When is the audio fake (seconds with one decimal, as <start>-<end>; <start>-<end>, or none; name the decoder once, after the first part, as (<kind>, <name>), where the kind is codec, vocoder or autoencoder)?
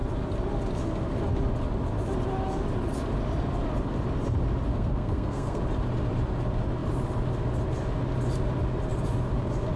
4.7-5.6 (codec, SNAC)